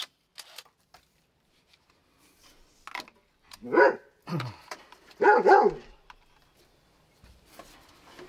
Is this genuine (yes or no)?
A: yes